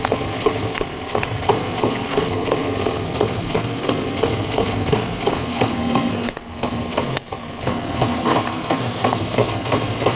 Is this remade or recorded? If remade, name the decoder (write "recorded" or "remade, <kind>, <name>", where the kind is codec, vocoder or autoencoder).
remade, codec, SNAC